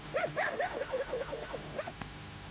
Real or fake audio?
fake